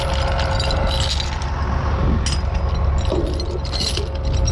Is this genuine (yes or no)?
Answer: yes